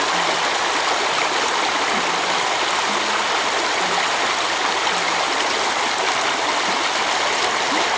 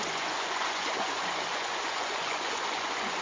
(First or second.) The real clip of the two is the first